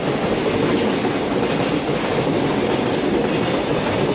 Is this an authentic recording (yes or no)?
yes